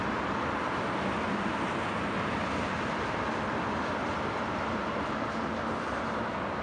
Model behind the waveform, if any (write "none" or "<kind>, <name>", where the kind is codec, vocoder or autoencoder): none